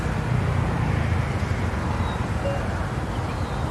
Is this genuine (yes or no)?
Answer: yes